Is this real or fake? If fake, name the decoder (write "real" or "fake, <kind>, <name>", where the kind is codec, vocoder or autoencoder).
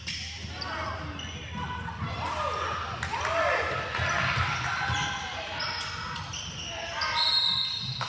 real